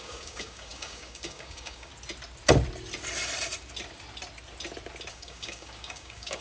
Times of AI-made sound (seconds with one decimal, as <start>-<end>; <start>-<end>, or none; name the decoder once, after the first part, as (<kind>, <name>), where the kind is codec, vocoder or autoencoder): 0.0-1.9 (codec, DAC); 5.1-6.4